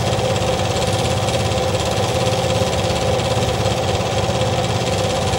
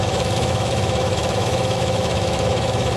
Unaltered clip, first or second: first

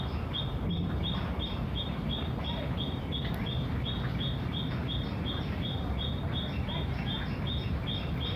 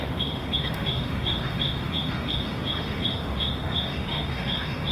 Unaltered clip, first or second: first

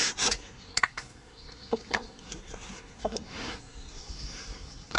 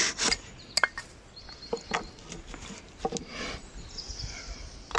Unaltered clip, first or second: second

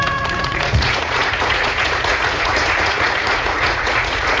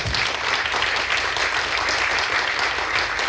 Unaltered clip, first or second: second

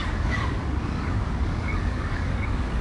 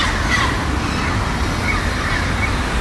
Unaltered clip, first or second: second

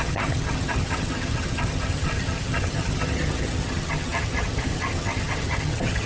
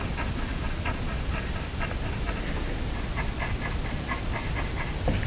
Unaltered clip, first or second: second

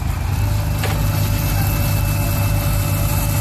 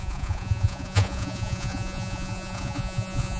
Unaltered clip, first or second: first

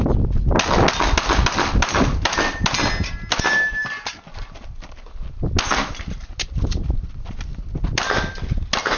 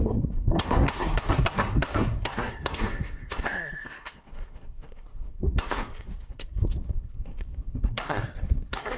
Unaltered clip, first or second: first